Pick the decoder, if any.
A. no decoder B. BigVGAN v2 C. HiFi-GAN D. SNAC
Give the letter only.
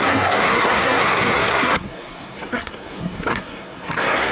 D